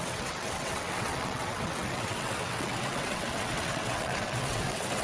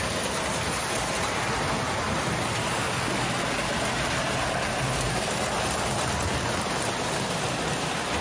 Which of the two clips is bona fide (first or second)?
second